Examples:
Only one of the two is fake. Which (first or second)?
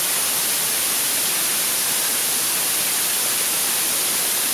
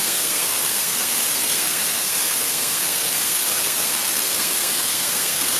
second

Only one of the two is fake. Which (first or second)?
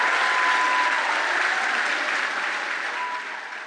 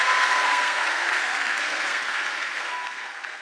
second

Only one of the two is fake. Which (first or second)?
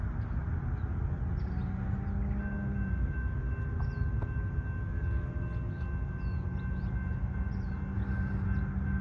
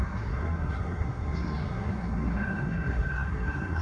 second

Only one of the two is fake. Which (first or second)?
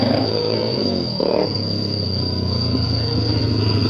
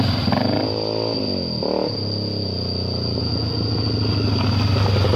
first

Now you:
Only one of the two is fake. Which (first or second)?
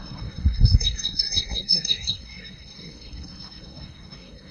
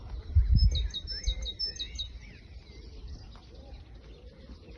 first